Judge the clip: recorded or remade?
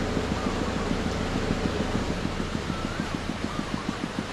remade